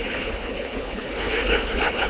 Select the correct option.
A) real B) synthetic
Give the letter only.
B